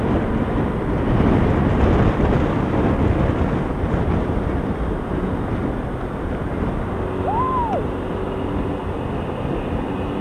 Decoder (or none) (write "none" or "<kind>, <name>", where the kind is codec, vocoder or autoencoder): none